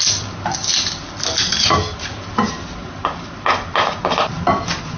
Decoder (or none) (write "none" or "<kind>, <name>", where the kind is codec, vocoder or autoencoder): none